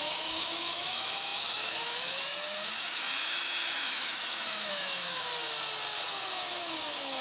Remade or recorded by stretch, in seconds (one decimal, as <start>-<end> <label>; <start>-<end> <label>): 0.0-5.3 remade; 5.3-6.1 recorded; 6.1-7.2 remade